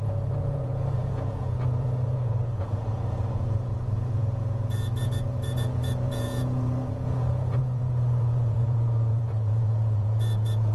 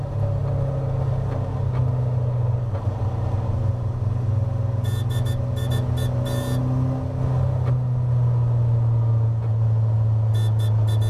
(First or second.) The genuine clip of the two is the second